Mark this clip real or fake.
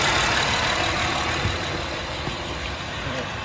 real